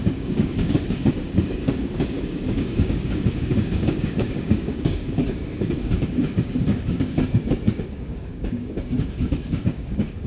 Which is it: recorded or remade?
remade